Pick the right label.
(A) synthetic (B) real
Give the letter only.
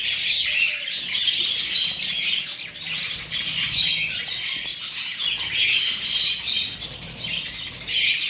B